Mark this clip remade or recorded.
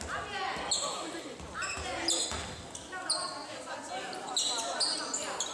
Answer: recorded